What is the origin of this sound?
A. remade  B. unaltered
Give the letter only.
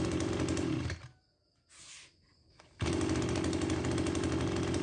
B